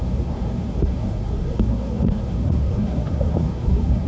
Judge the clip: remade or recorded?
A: remade